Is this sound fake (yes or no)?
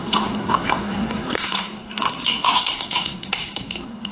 yes